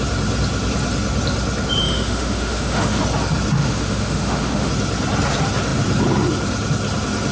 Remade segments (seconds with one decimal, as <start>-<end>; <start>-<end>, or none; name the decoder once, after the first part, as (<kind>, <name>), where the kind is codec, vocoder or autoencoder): 1.8-3.0 (autoencoder, DAC-VAE); 3.6-4.7